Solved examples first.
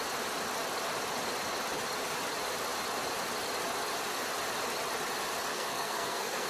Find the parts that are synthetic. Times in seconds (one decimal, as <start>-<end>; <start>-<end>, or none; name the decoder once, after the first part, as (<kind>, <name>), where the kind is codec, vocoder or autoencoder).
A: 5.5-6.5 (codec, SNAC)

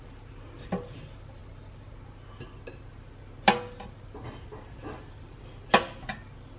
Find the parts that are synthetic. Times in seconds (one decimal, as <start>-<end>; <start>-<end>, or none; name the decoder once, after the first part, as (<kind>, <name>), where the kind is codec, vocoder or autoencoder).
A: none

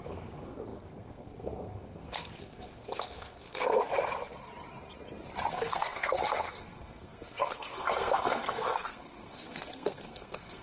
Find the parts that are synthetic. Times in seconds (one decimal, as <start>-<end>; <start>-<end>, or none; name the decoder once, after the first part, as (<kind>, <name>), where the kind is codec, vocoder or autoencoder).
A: 0.0-3.8 (codec, SNAC); 5.5-10.6

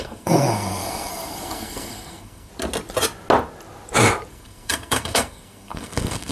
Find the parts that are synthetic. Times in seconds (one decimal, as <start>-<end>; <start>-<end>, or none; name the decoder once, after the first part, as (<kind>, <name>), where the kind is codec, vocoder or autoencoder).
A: 0.0-2.5 (codec, SNAC); 4.3-6.3

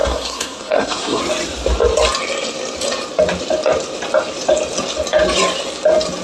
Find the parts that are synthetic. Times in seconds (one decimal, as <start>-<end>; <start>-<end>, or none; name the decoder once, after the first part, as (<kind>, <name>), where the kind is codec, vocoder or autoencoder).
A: 0.0-1.2 (codec, SNAC)

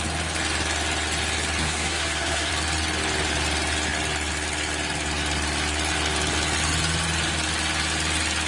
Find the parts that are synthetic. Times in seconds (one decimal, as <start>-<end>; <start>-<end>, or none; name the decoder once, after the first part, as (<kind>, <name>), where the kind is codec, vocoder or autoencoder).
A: 1.6-2.5 (codec, SNAC)

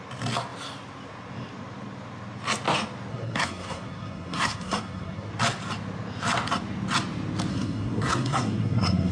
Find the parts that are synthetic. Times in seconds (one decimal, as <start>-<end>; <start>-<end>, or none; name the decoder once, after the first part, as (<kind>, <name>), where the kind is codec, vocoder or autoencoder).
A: 3.1-5.3 (codec, SNAC); 7.5-9.1